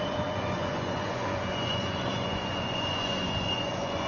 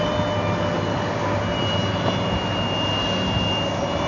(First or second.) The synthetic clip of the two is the first